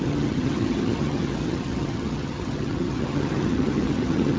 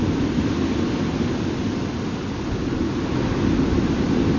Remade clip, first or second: first